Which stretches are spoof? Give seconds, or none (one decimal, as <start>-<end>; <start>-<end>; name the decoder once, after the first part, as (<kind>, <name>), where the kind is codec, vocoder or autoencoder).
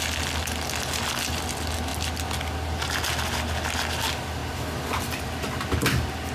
none